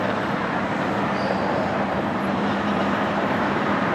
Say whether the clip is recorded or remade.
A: remade